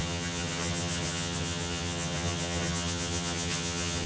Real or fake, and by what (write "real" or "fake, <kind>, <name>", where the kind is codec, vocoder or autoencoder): fake, vocoder, HiFi-GAN